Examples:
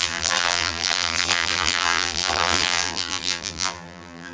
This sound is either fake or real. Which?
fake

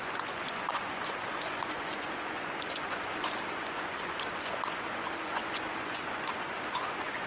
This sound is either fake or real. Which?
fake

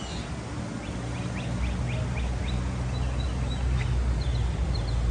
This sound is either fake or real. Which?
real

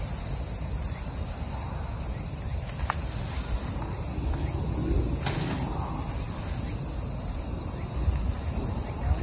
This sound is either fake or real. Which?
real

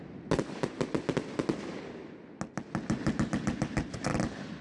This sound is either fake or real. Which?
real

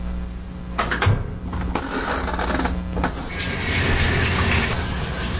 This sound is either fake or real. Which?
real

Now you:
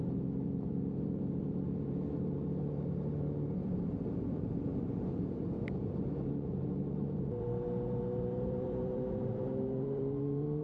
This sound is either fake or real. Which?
fake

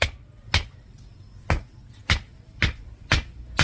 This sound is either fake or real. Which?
real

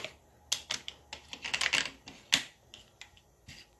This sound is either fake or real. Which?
real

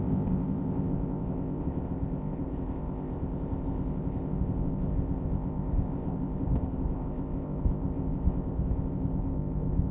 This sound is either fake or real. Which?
fake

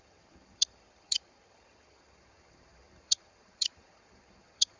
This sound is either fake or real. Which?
fake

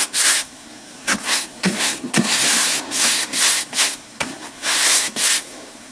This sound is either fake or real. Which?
fake